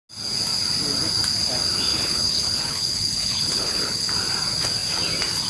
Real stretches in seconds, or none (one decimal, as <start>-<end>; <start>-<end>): 0.0-1.9; 4.1-5.5